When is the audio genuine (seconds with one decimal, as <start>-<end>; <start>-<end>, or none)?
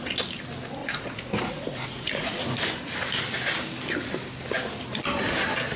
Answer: 0.0-0.8; 2.4-5.8